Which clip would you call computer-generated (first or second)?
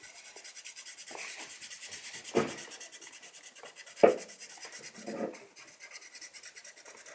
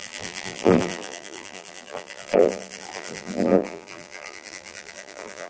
second